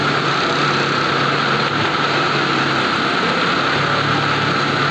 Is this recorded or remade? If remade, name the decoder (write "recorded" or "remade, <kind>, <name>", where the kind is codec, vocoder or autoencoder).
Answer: recorded